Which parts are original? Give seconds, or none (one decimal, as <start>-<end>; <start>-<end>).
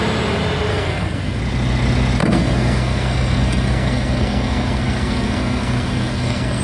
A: 0.0-0.7; 1.4-2.2